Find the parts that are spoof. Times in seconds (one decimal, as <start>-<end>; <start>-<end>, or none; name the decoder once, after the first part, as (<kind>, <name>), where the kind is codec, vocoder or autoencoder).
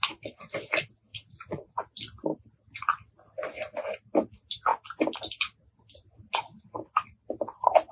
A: 1.1-1.7 (vocoder, Vocos)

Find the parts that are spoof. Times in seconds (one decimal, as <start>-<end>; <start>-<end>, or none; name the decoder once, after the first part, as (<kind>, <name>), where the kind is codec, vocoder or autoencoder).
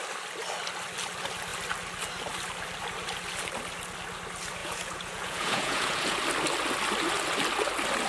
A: 4.6-6.2 (vocoder, Vocos)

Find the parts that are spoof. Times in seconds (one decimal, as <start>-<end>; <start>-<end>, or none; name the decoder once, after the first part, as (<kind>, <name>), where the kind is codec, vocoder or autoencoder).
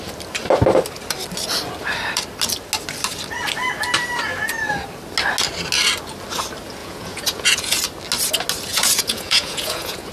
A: 6.8-7.8 (vocoder, Vocos); 8.7-10.1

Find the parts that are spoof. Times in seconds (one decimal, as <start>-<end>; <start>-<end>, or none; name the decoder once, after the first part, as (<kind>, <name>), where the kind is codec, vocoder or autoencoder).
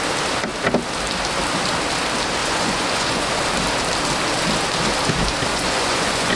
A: 2.4-3.3 (vocoder, Vocos); 5.5-6.4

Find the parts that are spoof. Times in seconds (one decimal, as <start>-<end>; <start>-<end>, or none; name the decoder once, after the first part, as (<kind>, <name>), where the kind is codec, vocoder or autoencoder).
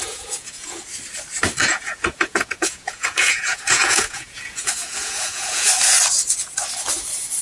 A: 0.0-0.8 (vocoder, Vocos); 1.6-5.7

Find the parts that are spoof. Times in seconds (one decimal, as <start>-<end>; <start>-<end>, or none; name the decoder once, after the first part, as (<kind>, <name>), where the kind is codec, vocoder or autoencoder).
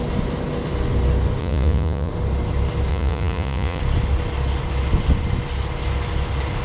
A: 1.4-2.1 (vocoder, Vocos); 2.9-3.8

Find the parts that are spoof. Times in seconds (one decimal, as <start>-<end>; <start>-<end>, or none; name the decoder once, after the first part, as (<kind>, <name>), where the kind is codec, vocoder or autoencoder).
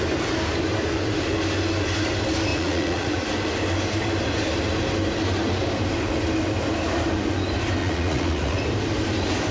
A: 2.5-3.3 (vocoder, Vocos); 7.8-8.6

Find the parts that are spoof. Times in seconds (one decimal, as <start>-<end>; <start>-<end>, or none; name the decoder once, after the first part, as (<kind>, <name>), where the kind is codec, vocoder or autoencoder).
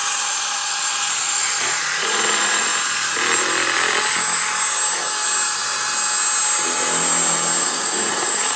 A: 0.0-2.7 (vocoder, Vocos); 7.6-8.6